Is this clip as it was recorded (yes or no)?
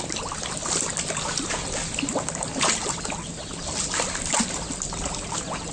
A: yes